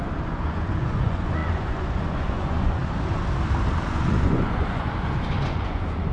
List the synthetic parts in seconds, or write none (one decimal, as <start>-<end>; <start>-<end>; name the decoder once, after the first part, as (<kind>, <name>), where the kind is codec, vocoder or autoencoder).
0.0-2.8 (vocoder, Vocos); 3.9-6.1